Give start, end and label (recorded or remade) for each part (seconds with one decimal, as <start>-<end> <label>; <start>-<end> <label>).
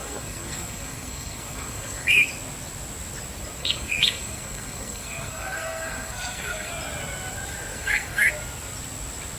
0.0-2.3 remade; 2.3-3.6 recorded; 3.6-6.7 remade; 6.7-7.7 recorded; 7.7-8.3 remade; 8.3-9.4 recorded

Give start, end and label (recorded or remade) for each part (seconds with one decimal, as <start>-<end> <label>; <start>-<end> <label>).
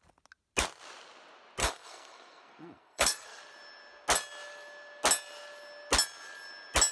0.0-1.6 recorded; 1.6-3.4 remade; 3.4-6.9 recorded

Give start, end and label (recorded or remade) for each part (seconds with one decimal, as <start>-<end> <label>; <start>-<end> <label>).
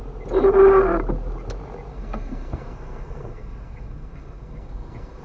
0.0-1.9 recorded; 1.9-5.2 remade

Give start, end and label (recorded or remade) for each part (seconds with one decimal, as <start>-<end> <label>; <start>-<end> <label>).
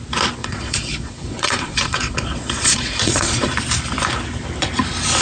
0.0-0.4 recorded; 0.4-3.5 remade; 3.5-5.2 recorded